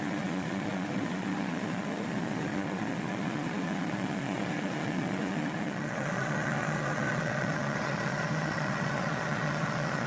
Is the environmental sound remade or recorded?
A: remade